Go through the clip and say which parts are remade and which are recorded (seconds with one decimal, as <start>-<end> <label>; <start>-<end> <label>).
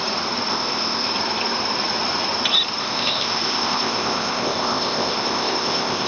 0.0-0.5 recorded; 0.5-1.1 remade; 1.1-2.8 recorded; 2.8-6.1 remade